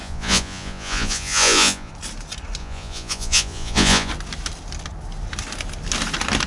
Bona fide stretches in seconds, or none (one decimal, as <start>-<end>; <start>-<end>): 1.9-2.6; 4.1-6.5